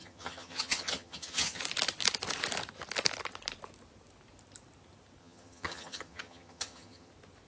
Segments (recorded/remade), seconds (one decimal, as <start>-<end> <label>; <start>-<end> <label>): 0.0-1.6 remade; 1.6-5.2 recorded; 5.2-7.1 remade; 7.1-7.5 recorded

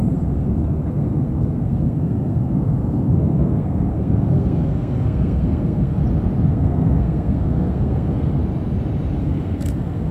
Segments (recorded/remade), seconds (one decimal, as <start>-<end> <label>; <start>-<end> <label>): 0.0-6.0 remade; 6.0-6.5 recorded; 6.5-8.4 remade; 8.4-9.2 recorded; 9.2-10.1 remade

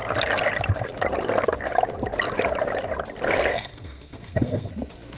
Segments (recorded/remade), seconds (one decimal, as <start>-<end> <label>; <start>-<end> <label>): 0.0-3.5 recorded; 3.5-4.7 remade; 4.7-5.2 recorded

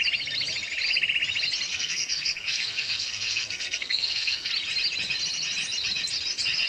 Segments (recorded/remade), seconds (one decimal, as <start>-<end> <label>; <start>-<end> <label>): 0.0-1.7 recorded; 1.7-4.5 remade; 4.5-6.7 recorded

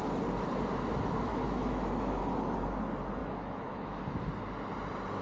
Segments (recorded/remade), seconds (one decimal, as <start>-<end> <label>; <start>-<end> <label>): 0.0-1.3 recorded; 1.3-2.2 remade; 2.2-3.2 recorded; 3.2-4.0 remade; 4.0-5.2 recorded